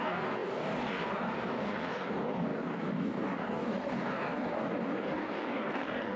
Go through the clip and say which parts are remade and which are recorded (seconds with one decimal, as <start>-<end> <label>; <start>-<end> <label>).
0.0-6.2 remade